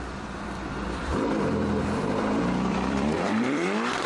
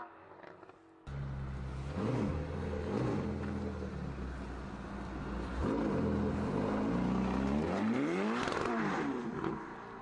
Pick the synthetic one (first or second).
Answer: first